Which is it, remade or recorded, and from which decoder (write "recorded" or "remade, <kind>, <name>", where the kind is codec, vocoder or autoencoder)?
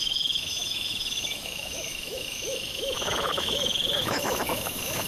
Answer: remade, autoencoder, DAC-VAE